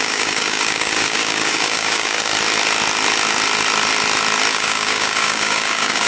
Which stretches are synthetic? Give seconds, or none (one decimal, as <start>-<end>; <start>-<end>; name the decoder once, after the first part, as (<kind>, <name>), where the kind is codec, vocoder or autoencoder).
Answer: 0.0-2.3 (codec, DAC); 4.5-6.1